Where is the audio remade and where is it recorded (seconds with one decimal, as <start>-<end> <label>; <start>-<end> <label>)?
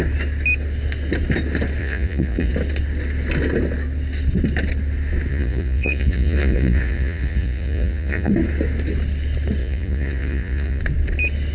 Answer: 0.0-1.8 recorded; 1.8-2.5 remade; 2.5-5.3 recorded; 5.3-8.3 remade; 8.3-9.6 recorded; 9.6-10.8 remade; 10.8-11.5 recorded